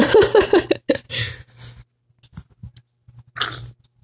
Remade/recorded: recorded